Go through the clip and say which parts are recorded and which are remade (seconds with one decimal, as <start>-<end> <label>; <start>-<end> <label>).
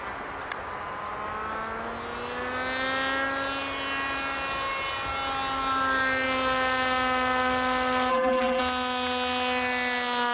0.0-8.1 recorded; 8.1-8.6 remade; 8.6-10.3 recorded